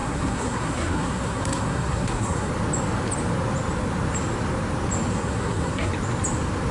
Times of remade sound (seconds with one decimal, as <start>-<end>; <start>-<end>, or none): 0.0-2.5; 5.1-5.9